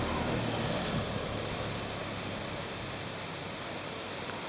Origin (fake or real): real